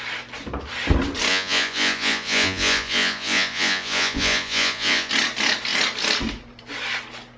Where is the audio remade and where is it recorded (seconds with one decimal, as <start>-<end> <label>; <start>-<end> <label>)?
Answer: 0.0-1.3 recorded; 1.3-5.1 remade; 5.1-7.4 recorded